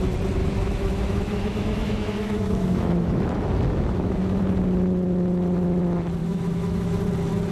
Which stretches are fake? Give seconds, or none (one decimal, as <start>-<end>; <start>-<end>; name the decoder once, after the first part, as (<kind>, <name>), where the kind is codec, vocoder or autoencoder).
0.4-4.4 (autoencoder, DAC-VAE); 6.2-7.0